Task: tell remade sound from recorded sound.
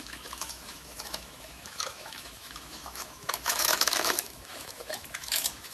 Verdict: remade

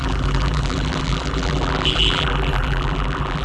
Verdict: remade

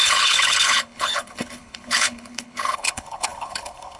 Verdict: remade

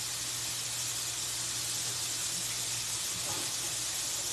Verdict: recorded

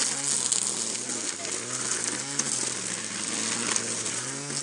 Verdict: recorded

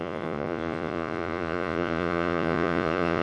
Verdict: remade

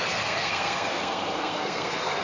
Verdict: remade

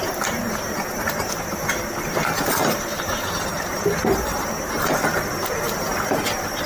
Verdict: remade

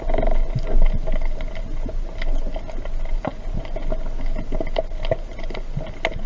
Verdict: recorded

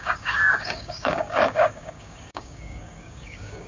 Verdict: remade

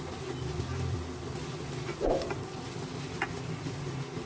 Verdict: recorded